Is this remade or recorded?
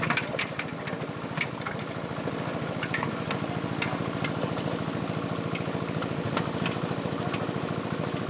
recorded